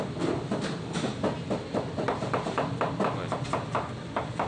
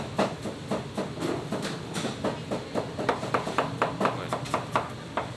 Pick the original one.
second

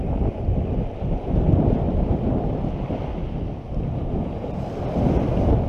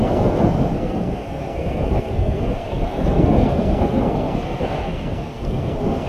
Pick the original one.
first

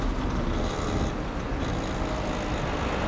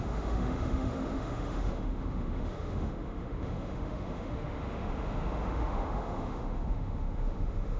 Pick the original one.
first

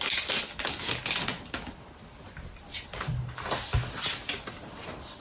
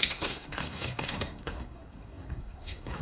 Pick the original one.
first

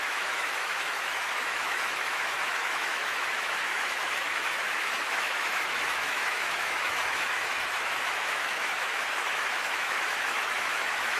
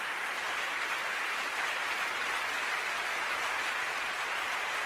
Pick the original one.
second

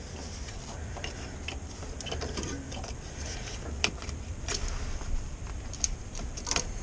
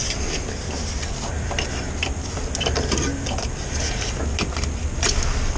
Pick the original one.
second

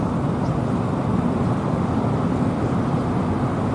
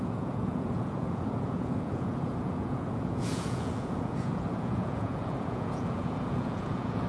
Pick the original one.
first